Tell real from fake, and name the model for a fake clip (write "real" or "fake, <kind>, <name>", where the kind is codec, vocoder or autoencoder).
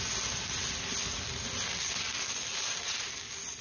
real